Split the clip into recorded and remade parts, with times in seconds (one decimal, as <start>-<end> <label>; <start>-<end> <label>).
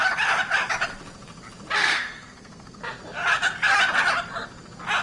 0.0-1.8 recorded; 1.8-2.8 remade; 2.8-5.0 recorded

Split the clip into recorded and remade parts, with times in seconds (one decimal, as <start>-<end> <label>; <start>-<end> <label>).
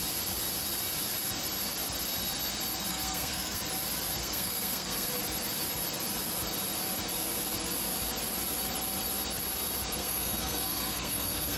0.0-2.9 recorded; 2.9-3.6 remade; 3.6-4.2 recorded; 4.2-5.1 remade; 5.1-10.0 recorded; 10.0-11.6 remade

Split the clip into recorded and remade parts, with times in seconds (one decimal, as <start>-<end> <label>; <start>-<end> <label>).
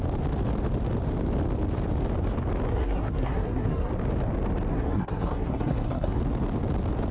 0.0-2.7 recorded; 2.7-3.9 remade; 3.9-4.7 recorded; 4.7-6.2 remade; 6.2-7.1 recorded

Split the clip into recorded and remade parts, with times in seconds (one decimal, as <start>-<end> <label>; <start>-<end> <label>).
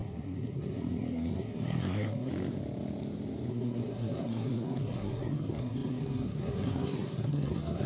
0.0-2.3 remade; 2.3-3.5 recorded; 3.5-7.9 remade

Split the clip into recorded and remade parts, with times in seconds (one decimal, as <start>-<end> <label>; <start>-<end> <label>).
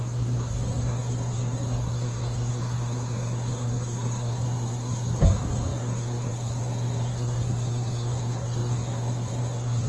0.0-9.9 remade